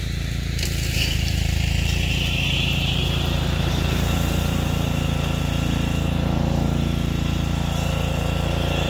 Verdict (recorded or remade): remade